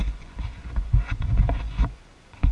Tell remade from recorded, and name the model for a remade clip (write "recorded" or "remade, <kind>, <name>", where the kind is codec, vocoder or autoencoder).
remade, vocoder, Vocos